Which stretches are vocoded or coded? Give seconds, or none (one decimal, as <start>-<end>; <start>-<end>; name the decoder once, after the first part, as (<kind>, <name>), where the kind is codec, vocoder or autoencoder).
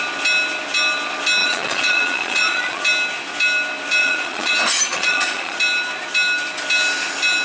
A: 1.4-2.8 (vocoder, Vocos); 4.0-4.5; 4.9-5.6